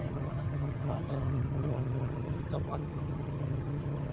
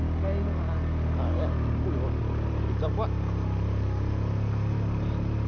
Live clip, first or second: second